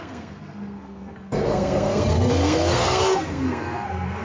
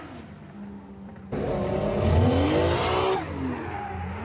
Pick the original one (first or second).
second